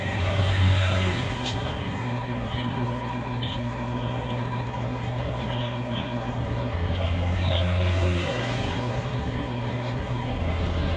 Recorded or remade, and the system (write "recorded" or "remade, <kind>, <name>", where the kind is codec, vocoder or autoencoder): remade, codec, SNAC